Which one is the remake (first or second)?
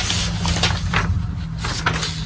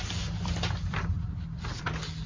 second